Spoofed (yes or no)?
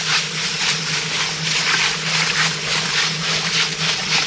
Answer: no